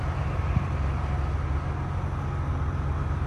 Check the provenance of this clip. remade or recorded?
recorded